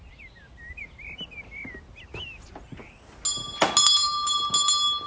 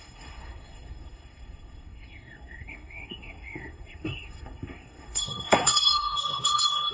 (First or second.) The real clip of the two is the first